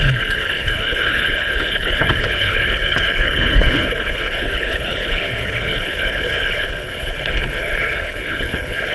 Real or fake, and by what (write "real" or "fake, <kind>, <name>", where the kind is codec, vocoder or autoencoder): fake, codec, HILCodec